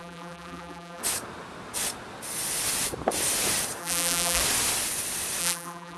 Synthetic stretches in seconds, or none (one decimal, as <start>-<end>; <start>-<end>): 0.0-1.0; 3.8-4.4; 5.4-6.0